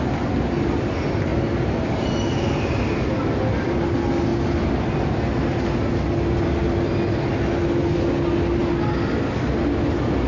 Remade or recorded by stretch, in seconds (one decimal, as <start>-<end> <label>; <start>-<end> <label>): 0.0-10.3 recorded